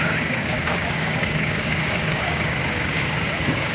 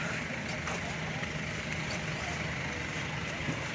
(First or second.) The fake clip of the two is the first